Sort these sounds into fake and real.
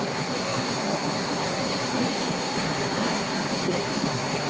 fake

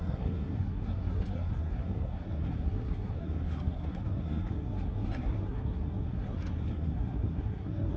fake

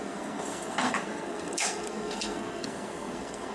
fake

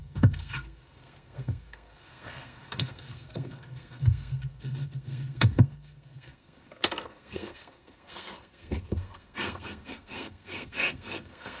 fake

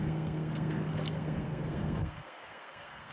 fake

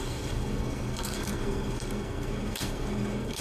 fake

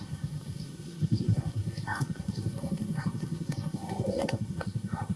fake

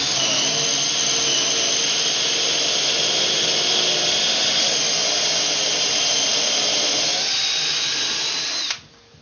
real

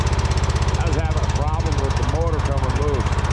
real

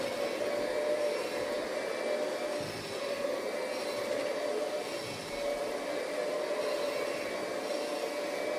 real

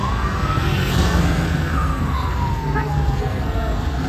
fake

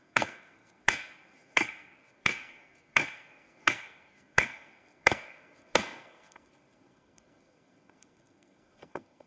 fake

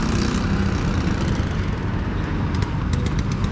real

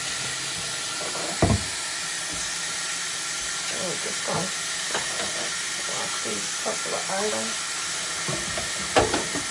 real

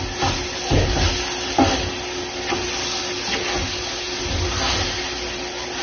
real